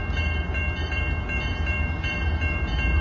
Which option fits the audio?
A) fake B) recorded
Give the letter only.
A